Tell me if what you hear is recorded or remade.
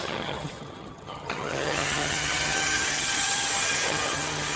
remade